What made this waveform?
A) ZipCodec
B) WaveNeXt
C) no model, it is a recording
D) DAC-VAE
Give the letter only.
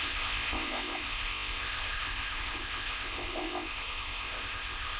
A